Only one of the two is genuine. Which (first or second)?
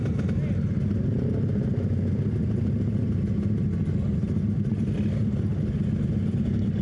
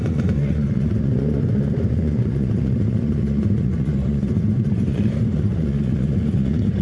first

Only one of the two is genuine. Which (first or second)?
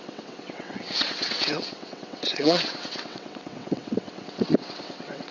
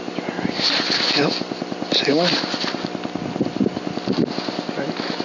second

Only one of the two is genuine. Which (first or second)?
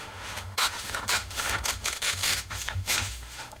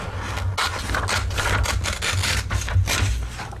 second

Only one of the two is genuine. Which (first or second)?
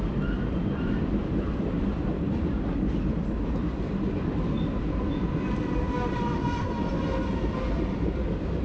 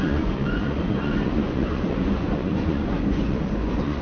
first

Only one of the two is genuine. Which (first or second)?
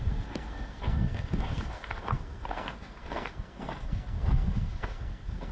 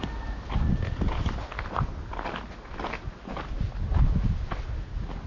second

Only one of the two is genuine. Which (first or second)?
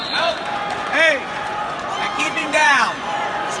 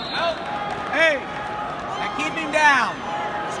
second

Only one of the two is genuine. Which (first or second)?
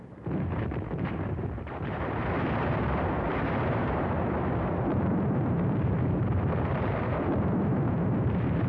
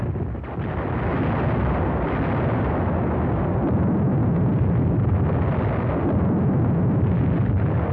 second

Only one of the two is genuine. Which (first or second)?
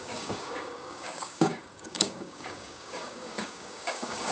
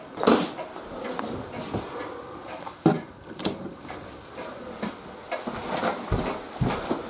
second